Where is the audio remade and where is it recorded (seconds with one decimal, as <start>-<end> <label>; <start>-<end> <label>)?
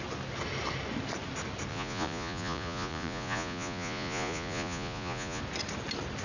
0.0-1.7 recorded; 1.7-5.4 remade; 5.4-6.2 recorded